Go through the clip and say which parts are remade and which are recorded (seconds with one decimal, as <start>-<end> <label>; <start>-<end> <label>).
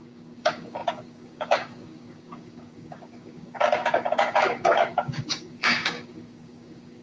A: 0.0-7.0 remade